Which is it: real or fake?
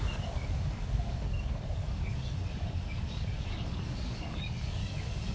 fake